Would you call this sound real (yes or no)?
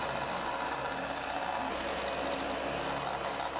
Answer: yes